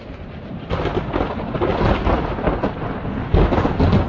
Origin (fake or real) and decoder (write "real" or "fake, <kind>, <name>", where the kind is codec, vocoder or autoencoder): real